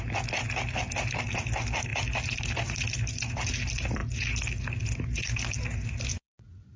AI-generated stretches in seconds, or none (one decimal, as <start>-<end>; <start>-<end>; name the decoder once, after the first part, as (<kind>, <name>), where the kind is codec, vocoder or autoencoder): 6.1-6.8 (vocoder, Vocos)